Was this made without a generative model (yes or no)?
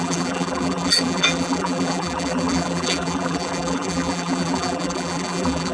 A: no